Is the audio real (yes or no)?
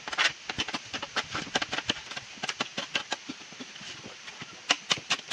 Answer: yes